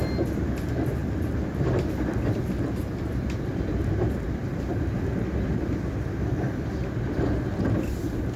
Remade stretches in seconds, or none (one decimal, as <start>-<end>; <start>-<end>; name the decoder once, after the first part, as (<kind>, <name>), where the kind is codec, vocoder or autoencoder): 1.0-2.4 (vocoder, BigVGAN v2); 6.8-7.3